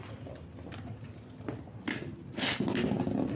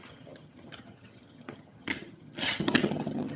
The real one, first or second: first